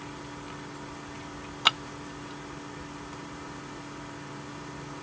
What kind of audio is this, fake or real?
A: real